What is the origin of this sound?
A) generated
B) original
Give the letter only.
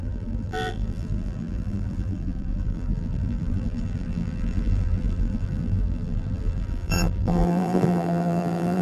A